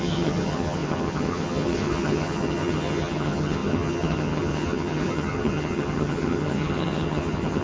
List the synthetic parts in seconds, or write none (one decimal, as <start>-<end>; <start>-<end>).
0.0-7.6

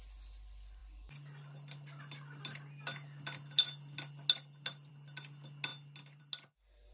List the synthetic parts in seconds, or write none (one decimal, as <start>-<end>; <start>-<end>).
none